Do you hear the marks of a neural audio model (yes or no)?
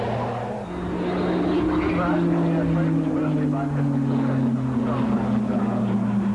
no